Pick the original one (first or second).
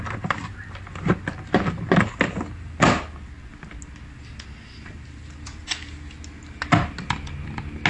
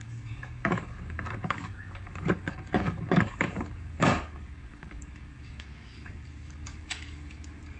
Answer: first